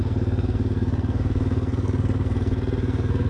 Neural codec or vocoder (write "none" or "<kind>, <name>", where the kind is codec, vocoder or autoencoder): codec, SNAC